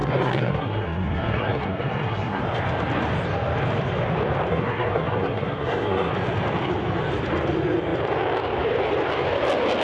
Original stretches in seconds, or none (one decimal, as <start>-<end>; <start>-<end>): 2.4-4.5; 6.1-9.8